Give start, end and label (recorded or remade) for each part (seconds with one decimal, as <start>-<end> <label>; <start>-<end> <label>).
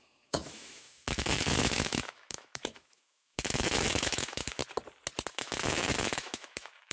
0.0-4.6 remade; 4.6-5.3 recorded; 5.3-6.9 remade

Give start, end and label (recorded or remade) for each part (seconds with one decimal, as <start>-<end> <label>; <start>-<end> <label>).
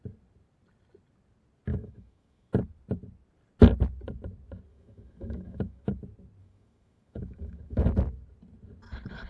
0.0-1.7 recorded; 1.7-2.5 remade; 2.5-4.7 recorded; 4.7-5.9 remade; 5.9-6.4 recorded; 6.4-7.9 remade; 7.9-9.3 recorded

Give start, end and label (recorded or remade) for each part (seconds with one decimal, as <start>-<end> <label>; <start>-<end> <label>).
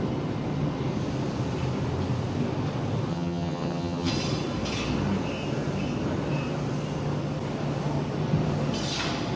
0.0-3.1 recorded; 3.1-4.1 remade; 4.1-9.4 recorded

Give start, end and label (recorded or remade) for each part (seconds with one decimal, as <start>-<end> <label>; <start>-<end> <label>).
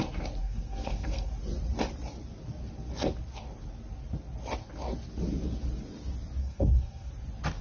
0.0-0.4 recorded; 0.4-1.3 remade; 1.3-6.4 recorded; 6.4-7.1 remade; 7.1-7.6 recorded